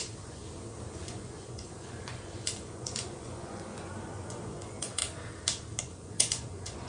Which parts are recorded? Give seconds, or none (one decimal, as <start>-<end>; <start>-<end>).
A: 0.4-0.9; 5.0-5.8